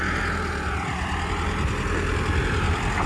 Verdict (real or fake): real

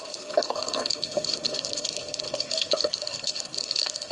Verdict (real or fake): fake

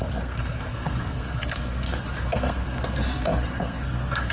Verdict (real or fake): fake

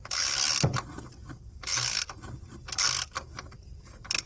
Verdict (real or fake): real